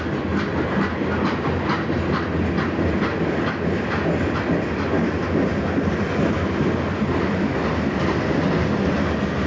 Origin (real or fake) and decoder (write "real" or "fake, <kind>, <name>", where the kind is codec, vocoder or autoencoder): real